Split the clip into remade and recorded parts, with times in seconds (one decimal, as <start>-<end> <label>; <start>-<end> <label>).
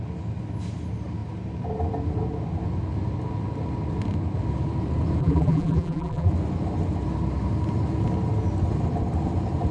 0.0-5.2 recorded; 5.2-6.3 remade; 6.3-9.7 recorded